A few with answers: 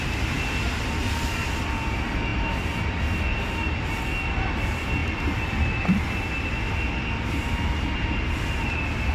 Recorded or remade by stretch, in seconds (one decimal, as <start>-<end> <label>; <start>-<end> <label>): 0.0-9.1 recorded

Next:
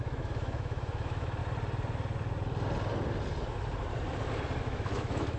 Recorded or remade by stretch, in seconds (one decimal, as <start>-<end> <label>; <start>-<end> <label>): 0.0-1.4 remade; 1.4-4.6 recorded; 4.6-5.4 remade

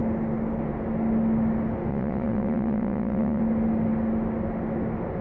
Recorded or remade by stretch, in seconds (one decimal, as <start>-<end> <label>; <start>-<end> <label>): 0.0-1.9 recorded; 1.9-3.4 remade; 3.4-5.2 recorded